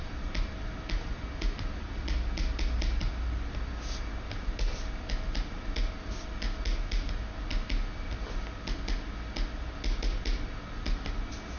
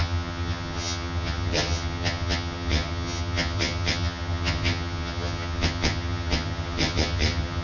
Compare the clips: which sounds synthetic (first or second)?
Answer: second